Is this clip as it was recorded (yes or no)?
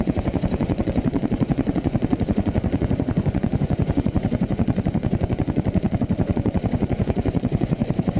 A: no